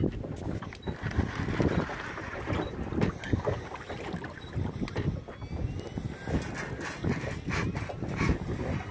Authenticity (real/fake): real